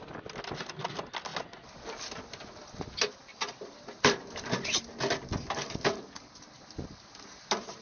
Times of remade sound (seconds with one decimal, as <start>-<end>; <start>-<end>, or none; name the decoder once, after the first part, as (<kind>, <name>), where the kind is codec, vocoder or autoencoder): none